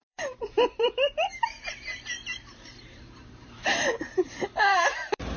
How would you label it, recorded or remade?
remade